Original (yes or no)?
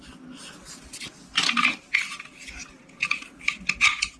yes